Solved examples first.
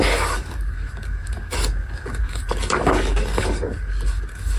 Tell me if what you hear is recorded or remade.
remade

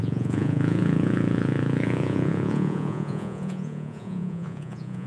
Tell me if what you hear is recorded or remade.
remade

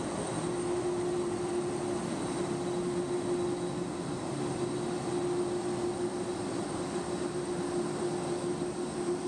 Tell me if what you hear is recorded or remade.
recorded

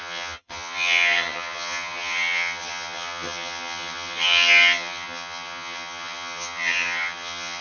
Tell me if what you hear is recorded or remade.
remade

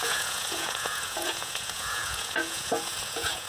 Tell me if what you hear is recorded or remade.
remade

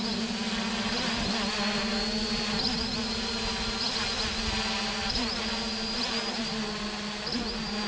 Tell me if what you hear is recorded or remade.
recorded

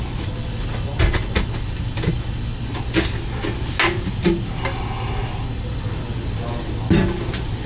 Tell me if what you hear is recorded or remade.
recorded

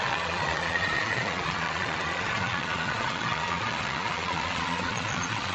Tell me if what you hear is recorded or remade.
remade